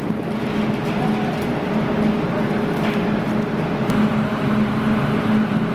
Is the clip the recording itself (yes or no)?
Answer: yes